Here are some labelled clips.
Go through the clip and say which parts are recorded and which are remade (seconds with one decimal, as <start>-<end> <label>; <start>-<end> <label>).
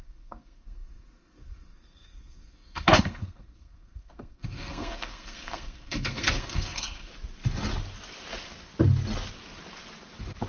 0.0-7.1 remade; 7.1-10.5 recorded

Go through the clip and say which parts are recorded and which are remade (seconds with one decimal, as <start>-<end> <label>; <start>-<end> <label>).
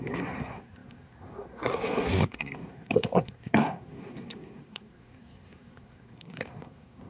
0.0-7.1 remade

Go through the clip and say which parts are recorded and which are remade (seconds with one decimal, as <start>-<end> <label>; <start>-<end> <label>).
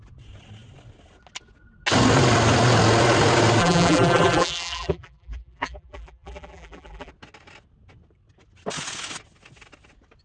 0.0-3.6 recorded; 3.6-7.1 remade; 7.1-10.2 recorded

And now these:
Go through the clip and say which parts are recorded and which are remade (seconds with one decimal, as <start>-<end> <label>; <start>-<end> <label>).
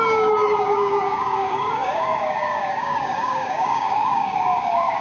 0.0-5.0 remade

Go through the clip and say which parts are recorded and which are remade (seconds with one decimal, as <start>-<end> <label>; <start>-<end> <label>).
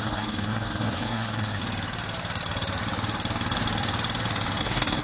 0.0-1.6 remade; 1.6-4.6 recorded; 4.6-5.0 remade